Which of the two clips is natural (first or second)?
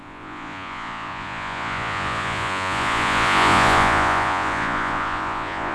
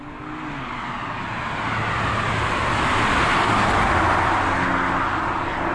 second